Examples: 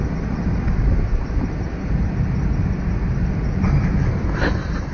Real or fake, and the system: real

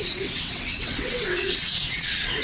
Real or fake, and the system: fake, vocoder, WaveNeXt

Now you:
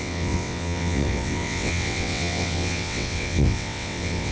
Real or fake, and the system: fake, vocoder, WaveNeXt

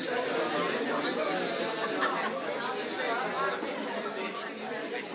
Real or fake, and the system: real